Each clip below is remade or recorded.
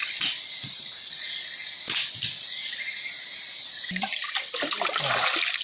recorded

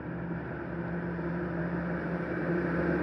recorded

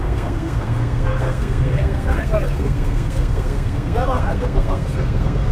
remade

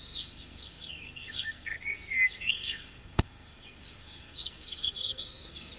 remade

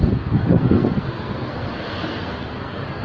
remade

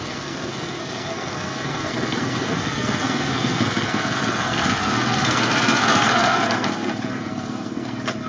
remade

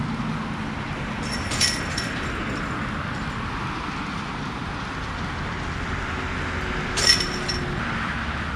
recorded